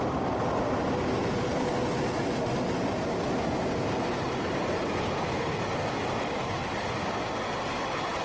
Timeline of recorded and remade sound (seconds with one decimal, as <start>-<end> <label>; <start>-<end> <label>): 0.0-8.2 recorded